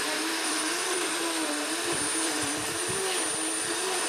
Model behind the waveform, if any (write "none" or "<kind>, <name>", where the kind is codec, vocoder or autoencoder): vocoder, BigVGAN v2